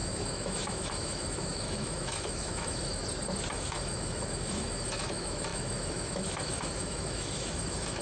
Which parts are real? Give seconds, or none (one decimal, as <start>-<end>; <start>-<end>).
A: 3.0-3.5